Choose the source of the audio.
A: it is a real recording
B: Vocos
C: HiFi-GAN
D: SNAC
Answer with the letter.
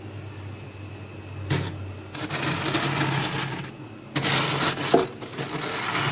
A